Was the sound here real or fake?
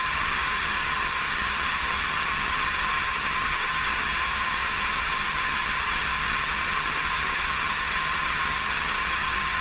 fake